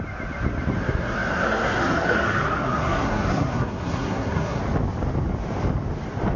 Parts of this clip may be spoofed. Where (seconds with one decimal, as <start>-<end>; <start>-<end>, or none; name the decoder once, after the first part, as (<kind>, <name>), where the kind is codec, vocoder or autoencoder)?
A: 0.8-4.6 (codec, SNAC)